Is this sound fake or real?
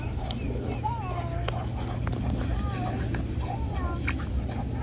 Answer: real